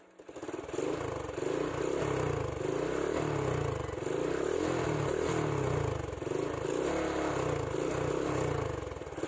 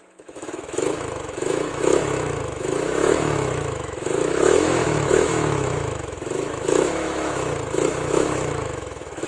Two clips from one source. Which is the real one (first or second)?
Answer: first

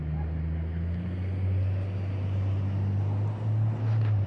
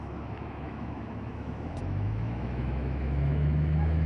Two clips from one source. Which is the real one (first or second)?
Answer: first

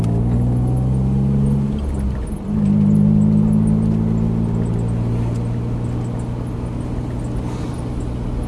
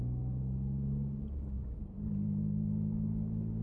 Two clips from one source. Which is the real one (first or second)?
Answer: first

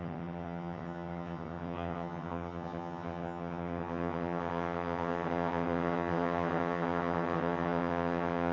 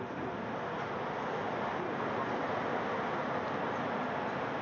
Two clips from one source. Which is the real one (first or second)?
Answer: second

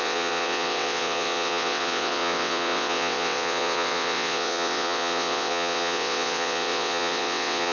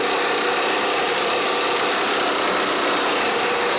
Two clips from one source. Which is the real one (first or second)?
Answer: second